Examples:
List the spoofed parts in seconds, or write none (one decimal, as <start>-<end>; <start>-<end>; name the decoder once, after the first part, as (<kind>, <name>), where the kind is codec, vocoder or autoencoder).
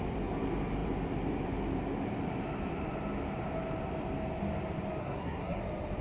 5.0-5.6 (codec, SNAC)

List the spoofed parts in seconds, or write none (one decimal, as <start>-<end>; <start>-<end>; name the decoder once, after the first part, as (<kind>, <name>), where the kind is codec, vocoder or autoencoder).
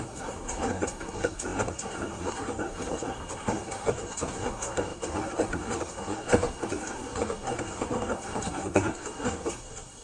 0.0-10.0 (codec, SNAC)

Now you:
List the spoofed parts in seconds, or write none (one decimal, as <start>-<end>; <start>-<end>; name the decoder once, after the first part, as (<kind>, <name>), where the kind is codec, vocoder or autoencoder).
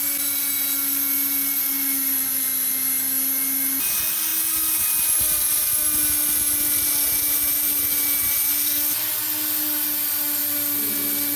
none